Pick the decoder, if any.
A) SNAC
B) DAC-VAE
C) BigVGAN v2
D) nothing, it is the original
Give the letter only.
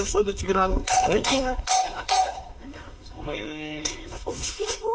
A